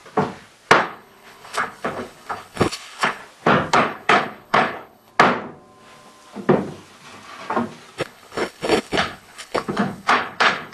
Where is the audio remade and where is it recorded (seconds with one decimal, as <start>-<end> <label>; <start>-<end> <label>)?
0.0-0.8 recorded; 0.8-3.2 remade; 3.2-3.7 recorded; 3.7-5.1 remade; 5.1-8.0 recorded; 8.0-10.7 remade